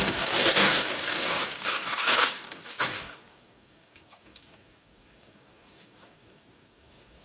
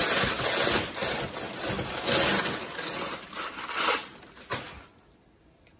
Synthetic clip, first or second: first